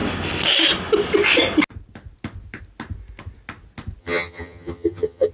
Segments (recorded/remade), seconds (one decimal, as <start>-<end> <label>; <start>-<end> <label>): 0.0-4.0 recorded; 4.0-5.3 remade